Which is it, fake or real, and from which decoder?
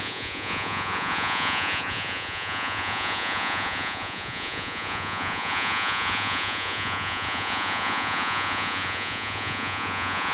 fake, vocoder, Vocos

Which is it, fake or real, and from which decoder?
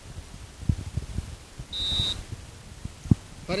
real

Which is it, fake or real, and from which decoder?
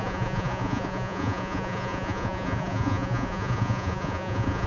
fake, vocoder, Vocos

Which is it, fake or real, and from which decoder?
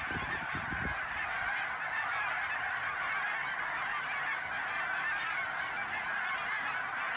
real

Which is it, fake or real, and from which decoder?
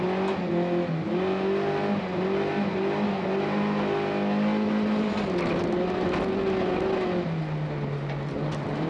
real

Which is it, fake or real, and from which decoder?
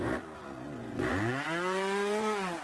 fake, vocoder, Vocos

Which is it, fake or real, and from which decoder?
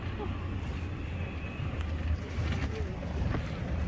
real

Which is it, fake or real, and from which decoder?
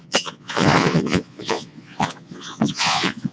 fake, vocoder, Vocos